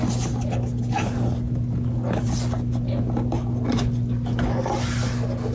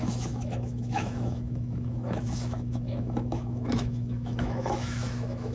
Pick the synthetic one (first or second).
second